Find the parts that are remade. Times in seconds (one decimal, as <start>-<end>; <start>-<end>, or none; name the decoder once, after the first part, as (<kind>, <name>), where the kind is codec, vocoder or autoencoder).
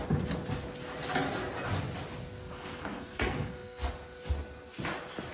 2.4-3.9 (codec, SNAC)